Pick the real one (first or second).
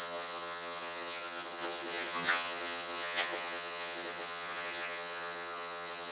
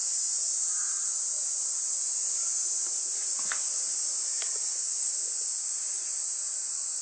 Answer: second